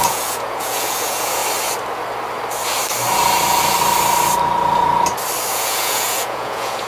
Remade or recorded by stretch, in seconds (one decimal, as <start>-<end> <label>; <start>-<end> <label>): 0.0-1.4 remade; 1.4-5.5 recorded; 5.5-6.9 remade